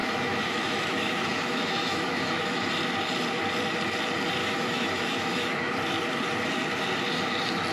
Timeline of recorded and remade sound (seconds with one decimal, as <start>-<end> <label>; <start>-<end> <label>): 0.0-2.7 remade; 2.7-4.4 recorded; 4.4-5.7 remade; 5.7-7.7 recorded